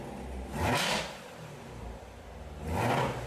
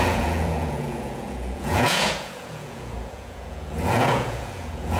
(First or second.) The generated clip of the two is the second